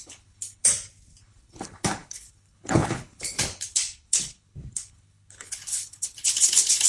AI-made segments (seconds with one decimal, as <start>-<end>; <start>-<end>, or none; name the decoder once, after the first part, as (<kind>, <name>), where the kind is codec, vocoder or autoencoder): 0.0-0.7 (codec, HILCodec); 1.2-6.9